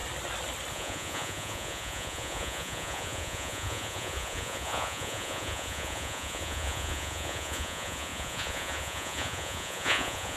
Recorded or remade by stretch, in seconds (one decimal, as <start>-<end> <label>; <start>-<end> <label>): 0.0-0.7 recorded; 0.7-10.4 remade